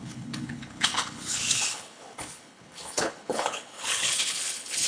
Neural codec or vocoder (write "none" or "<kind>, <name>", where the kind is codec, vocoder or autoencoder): codec, HILCodec